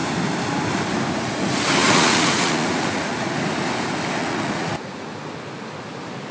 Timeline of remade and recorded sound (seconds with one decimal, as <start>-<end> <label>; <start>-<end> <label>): 0.0-1.8 recorded; 1.8-3.3 remade; 3.3-4.2 recorded; 4.2-5.1 remade; 5.1-6.3 recorded